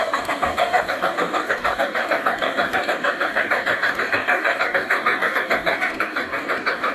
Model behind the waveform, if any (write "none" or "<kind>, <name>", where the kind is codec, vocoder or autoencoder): codec, DAC